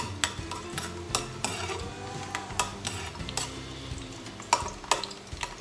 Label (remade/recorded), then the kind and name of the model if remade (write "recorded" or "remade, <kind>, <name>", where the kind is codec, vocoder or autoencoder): recorded